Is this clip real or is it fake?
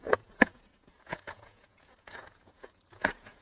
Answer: fake